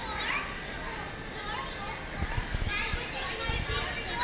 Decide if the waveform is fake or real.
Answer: real